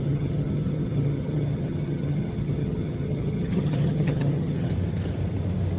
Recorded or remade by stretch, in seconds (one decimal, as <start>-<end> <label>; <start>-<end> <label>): 0.0-4.7 remade; 4.7-5.8 recorded